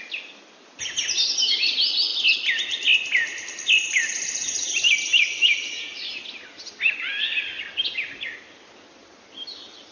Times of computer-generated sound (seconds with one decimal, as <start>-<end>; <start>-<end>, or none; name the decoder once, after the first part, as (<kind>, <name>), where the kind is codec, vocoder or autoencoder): none